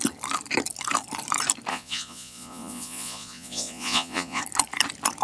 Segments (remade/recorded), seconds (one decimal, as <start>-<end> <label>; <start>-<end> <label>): 0.0-1.7 recorded; 1.7-4.4 remade; 4.4-5.2 recorded